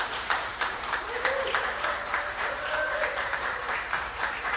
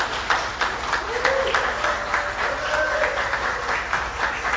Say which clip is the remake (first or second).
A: first